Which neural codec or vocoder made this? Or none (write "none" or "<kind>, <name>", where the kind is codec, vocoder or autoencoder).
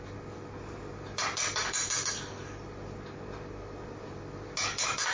none